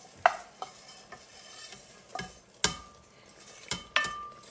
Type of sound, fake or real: real